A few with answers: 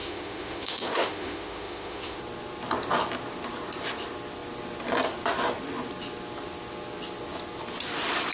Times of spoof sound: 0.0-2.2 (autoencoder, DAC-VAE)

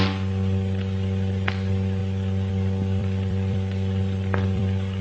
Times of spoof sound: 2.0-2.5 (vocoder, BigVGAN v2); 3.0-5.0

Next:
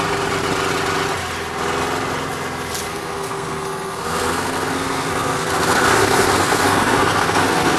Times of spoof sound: 2.9-7.8 (codec, SNAC)

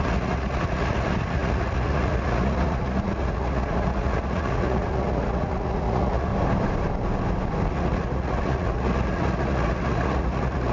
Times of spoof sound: 0.0-6.3 (vocoder, Vocos); 7.7-10.7

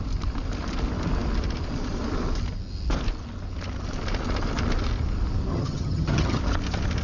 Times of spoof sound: 5.5-6.4 (vocoder, HiFi-GAN)

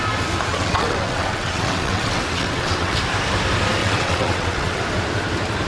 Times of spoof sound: 0.5-3.0 (vocoder, WaveNeXt); 3.8-4.8

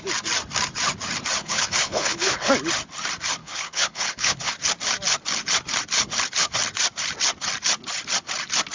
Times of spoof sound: 1.4-2.5 (codec, HILCodec); 3.4-4.5